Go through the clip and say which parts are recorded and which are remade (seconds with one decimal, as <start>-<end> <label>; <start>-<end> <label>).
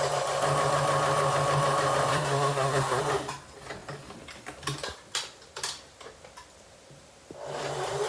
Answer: 0.0-2.1 recorded; 2.1-3.0 remade; 3.0-8.1 recorded